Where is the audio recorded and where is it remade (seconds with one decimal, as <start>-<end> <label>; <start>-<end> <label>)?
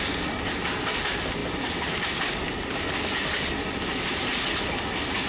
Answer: 0.0-5.3 recorded